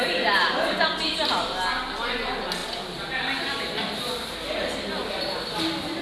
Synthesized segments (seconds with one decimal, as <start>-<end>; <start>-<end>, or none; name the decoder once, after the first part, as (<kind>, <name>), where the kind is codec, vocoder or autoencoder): none